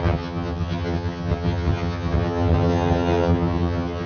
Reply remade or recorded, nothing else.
remade